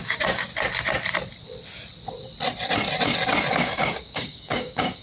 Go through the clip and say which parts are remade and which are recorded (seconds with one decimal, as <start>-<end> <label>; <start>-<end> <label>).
0.0-0.5 remade; 0.5-3.5 recorded; 3.5-5.0 remade